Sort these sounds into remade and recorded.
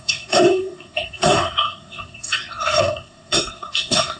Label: remade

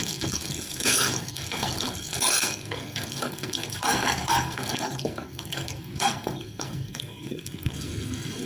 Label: remade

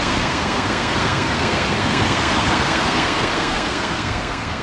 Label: remade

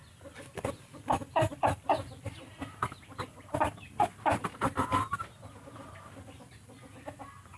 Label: recorded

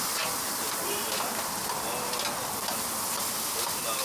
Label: recorded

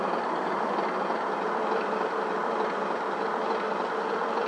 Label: recorded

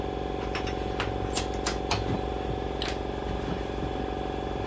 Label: recorded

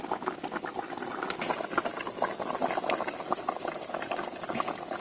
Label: recorded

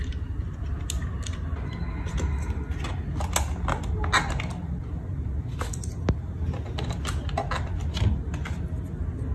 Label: recorded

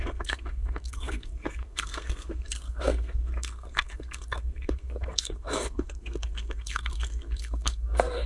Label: remade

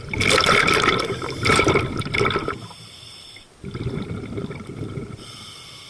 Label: recorded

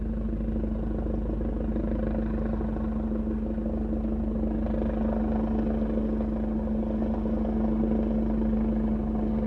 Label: recorded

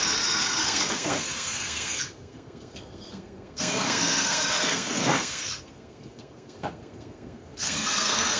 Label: remade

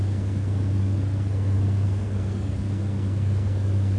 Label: remade